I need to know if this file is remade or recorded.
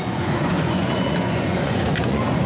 remade